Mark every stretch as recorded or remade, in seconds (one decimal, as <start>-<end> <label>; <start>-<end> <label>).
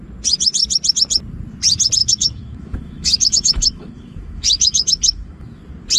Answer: 0.0-2.0 recorded; 2.0-5.6 remade; 5.6-6.0 recorded